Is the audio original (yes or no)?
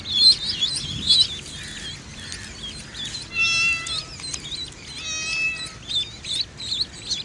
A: yes